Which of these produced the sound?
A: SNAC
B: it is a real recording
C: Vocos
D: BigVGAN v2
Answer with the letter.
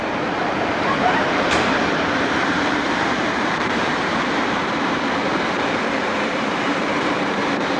D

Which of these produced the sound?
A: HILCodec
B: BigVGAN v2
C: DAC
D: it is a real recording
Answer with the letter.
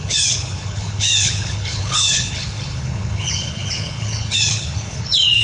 A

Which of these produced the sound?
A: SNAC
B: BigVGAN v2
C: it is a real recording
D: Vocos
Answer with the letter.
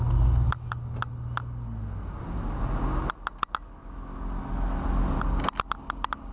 C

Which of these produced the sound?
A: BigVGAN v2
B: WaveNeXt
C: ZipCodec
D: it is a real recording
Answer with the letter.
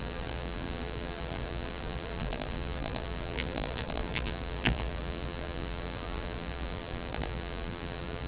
A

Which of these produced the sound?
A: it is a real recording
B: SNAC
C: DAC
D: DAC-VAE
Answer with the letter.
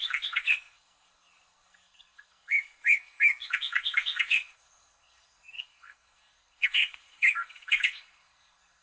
B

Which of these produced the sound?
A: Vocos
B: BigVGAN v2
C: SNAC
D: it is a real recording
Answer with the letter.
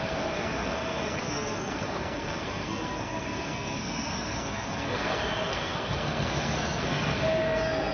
C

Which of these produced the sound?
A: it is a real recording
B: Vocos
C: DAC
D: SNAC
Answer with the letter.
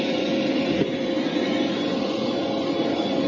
B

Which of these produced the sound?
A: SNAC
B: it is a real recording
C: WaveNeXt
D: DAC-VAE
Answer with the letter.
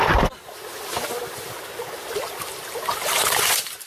B